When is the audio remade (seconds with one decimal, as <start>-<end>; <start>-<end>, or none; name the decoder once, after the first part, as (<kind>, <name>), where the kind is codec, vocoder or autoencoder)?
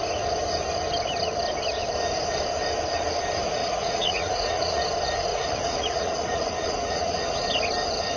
3.6-4.8 (vocoder, Vocos); 5.3-7.4